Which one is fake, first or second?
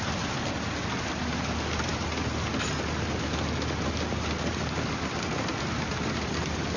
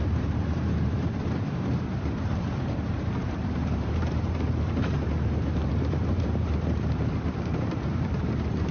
second